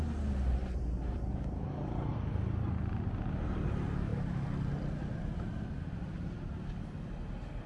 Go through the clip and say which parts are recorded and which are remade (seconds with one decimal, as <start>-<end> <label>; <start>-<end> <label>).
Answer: 0.0-7.7 recorded